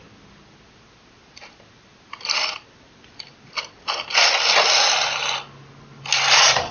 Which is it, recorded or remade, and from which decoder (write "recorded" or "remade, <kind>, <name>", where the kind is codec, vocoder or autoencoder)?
recorded